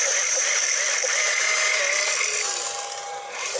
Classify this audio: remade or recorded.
recorded